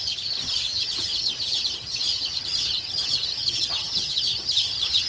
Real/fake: fake